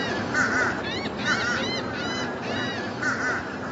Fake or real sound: real